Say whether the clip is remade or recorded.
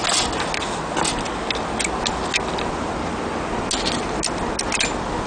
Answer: recorded